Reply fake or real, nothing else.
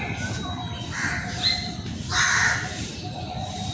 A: real